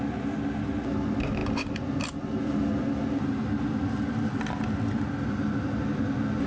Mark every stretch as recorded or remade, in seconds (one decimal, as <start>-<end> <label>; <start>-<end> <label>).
0.0-6.5 recorded